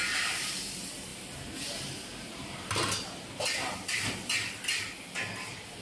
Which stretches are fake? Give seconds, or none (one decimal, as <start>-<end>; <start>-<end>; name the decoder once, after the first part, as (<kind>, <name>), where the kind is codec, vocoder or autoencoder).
none